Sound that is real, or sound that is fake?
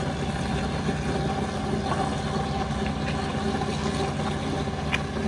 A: real